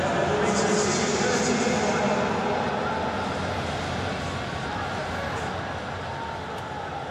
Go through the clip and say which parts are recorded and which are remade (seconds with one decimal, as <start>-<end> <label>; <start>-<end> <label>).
0.0-7.1 recorded